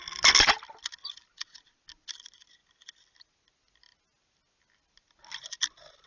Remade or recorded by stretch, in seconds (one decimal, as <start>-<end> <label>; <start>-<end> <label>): 0.0-1.3 recorded; 1.3-1.8 remade; 1.8-6.1 recorded